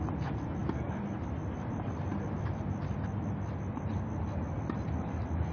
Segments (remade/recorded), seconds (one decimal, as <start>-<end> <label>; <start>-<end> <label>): 0.0-0.6 recorded; 0.6-3.9 remade; 3.9-5.5 recorded